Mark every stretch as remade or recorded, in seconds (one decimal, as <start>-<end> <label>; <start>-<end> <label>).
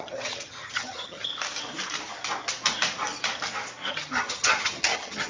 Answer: 0.0-1.3 remade; 1.3-3.9 recorded; 3.9-5.3 remade